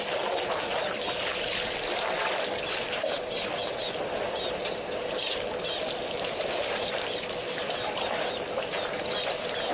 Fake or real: real